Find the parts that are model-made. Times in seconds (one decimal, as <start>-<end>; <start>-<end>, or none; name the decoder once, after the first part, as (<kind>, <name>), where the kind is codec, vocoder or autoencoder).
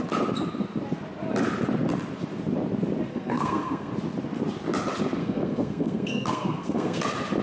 3.1-3.9 (codec, SNAC); 5.2-7.0